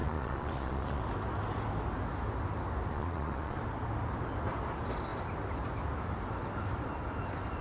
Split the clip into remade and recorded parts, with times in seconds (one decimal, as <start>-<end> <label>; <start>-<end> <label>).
0.0-1.0 remade; 1.0-2.9 recorded; 2.9-3.6 remade; 3.6-7.6 recorded